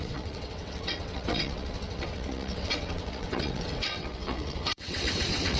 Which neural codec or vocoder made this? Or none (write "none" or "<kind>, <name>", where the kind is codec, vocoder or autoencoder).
vocoder, WaveNeXt